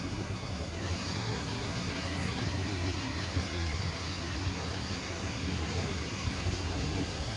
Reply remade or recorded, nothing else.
remade